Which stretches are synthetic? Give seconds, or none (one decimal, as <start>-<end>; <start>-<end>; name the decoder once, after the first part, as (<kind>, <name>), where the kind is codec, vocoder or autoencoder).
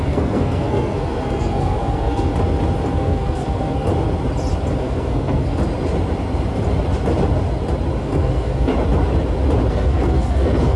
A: 0.0-2.3 (codec, SNAC); 2.9-3.9; 4.8-5.6; 8.0-8.7; 9.7-10.8